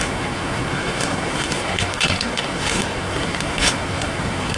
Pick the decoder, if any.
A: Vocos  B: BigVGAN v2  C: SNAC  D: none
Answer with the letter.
C